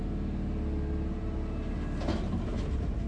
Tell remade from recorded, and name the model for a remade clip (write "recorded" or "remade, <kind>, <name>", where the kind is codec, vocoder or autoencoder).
recorded